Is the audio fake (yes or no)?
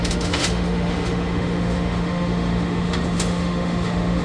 yes